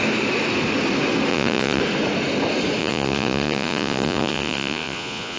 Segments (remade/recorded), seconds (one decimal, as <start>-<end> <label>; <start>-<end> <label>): 0.0-1.3 recorded; 1.3-1.8 remade; 1.8-2.8 recorded; 2.8-5.4 remade